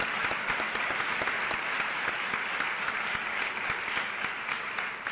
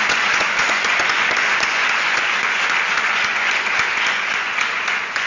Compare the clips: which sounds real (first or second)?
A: first